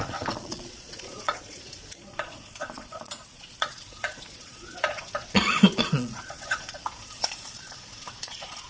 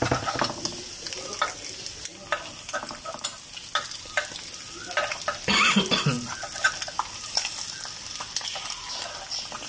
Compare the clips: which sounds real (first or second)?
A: second